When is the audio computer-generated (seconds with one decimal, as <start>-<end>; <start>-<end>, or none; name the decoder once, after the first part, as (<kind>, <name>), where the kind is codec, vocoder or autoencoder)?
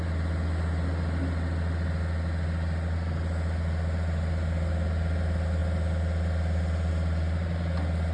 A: 5.6-6.9 (vocoder, BigVGAN v2)